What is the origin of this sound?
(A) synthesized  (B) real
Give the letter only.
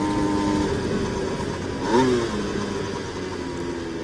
B